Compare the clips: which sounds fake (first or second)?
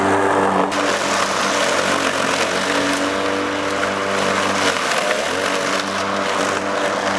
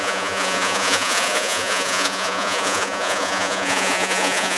second